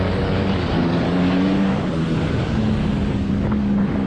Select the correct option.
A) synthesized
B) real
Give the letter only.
A